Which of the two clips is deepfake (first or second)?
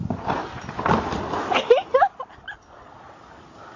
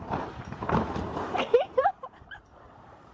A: second